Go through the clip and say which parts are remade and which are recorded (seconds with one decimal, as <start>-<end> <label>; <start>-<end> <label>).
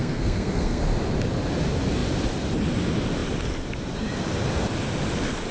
0.0-0.8 remade; 0.8-5.5 recorded